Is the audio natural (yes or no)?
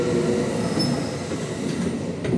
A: yes